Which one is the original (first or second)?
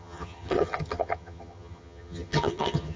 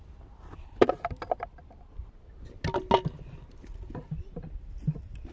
second